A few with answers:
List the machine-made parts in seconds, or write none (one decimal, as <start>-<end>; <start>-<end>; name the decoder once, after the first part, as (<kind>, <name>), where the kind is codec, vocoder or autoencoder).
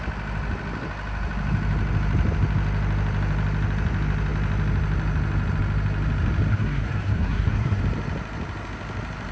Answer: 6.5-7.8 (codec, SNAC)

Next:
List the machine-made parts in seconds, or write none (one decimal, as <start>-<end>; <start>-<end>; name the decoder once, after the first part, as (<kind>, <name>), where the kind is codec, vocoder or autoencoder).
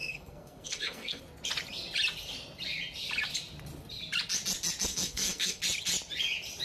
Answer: 0.0-1.2 (codec, SNAC); 4.9-5.6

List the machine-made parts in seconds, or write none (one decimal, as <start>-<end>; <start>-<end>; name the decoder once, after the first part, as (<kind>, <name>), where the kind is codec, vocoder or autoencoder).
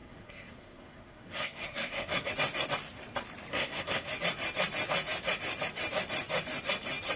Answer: 0.0-2.3 (codec, SNAC); 3.5-4.1